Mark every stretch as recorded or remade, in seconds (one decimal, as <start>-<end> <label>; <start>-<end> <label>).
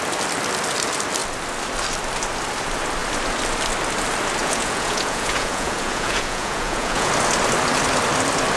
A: 0.0-4.4 recorded; 4.4-7.1 remade; 7.1-8.6 recorded